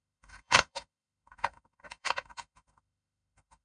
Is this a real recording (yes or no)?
no